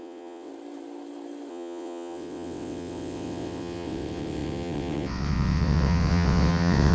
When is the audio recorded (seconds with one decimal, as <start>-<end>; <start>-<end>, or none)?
0.5-1.5